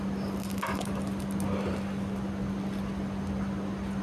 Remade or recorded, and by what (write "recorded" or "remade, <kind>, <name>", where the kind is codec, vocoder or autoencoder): recorded